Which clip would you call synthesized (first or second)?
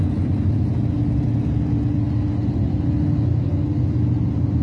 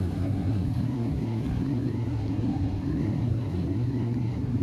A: second